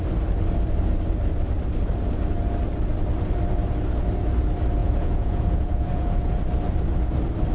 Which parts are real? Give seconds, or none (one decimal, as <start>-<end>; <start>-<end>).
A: 0.0-4.8; 6.3-7.5